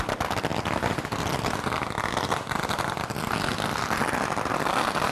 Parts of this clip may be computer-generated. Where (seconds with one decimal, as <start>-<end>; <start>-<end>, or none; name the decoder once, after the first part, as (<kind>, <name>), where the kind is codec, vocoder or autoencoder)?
none